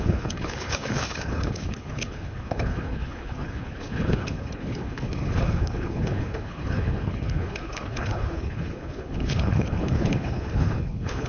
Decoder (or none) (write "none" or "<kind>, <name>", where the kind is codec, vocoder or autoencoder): codec, HILCodec